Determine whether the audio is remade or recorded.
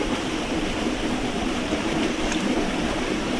remade